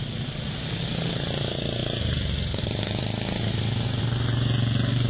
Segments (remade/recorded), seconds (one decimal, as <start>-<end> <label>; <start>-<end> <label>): 0.0-5.1 recorded